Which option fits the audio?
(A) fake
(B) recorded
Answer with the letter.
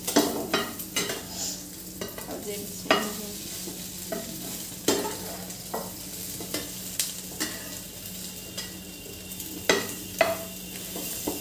B